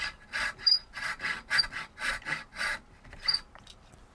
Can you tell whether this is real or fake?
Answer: real